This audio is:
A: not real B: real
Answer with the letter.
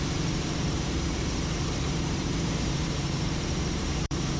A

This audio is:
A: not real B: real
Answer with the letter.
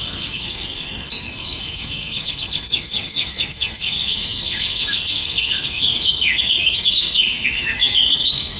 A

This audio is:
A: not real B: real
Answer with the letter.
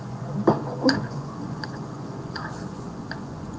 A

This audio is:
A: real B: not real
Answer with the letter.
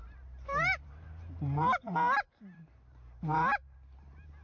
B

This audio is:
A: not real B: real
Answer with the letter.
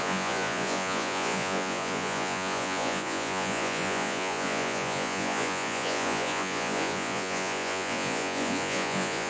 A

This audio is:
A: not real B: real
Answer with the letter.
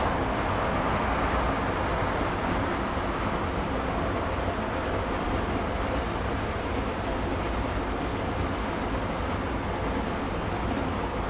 B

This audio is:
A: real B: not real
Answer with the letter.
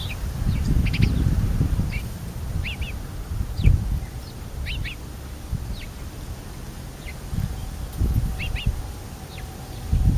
A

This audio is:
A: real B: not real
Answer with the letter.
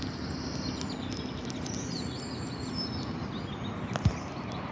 A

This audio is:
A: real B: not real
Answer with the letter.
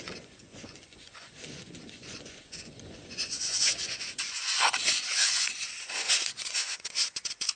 B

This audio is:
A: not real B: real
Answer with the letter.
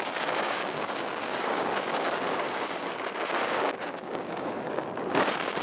A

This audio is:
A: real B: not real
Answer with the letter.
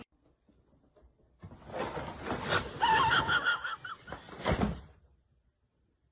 A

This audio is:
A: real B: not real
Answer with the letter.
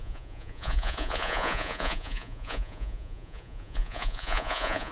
B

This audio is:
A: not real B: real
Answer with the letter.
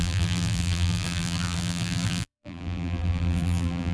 A